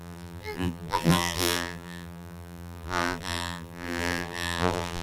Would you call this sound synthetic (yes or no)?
yes